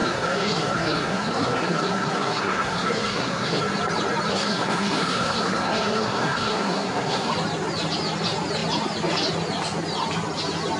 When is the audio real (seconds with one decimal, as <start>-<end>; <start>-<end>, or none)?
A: 3.6-4.3; 7.3-10.8

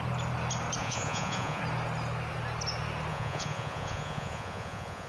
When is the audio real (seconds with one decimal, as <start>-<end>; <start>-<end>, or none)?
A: 0.0-0.8; 1.6-3.1

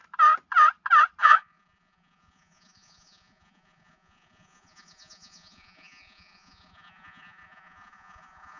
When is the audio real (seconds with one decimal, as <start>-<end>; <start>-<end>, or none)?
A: 0.0-1.2

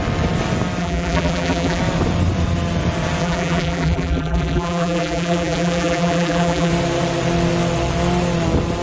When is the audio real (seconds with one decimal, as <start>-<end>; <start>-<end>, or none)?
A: 0.0-0.8; 1.8-3.2; 6.7-8.8

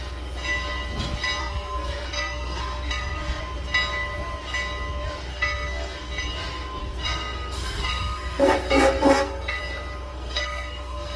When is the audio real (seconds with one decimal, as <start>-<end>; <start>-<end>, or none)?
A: 0.0-1.4; 3.4-5.3; 6.1-6.8; 9.6-10.1

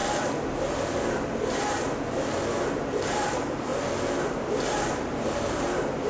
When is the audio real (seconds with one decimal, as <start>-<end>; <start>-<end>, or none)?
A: 0.0-2.6; 3.7-4.7